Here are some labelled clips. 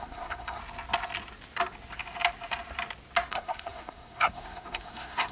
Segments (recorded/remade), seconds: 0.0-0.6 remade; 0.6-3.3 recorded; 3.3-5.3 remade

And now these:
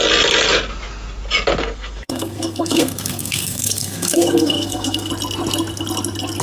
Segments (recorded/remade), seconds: 0.0-1.6 recorded; 1.6-5.1 remade; 5.1-6.4 recorded

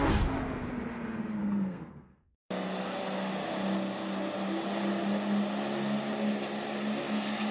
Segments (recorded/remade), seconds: 0.0-1.4 recorded; 1.4-2.5 remade; 2.5-7.5 recorded

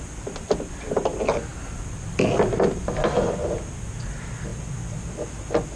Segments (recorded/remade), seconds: 0.0-5.8 recorded

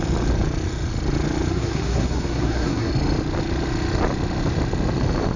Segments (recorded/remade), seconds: 0.0-1.5 recorded; 1.5-2.9 remade; 2.9-5.4 recorded

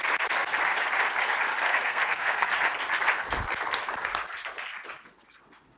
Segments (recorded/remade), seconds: 0.0-1.7 recorded; 1.7-2.5 remade; 2.5-5.8 recorded

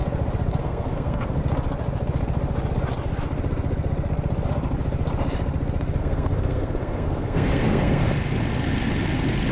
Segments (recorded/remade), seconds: 0.0-0.6 recorded; 0.6-1.4 remade; 1.4-6.0 recorded; 6.0-8.0 remade; 8.0-9.5 recorded

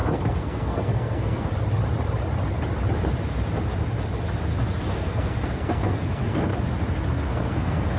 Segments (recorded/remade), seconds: 0.0-1.5 remade; 1.5-4.9 recorded; 4.9-6.5 remade; 6.5-7.3 recorded; 7.3-8.0 remade